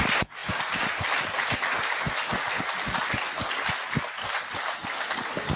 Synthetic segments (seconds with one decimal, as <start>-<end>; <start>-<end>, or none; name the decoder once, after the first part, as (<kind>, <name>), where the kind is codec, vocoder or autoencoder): none